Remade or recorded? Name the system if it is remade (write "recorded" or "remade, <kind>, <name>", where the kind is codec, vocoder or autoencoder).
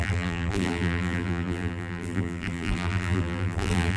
remade, vocoder, BigVGAN v2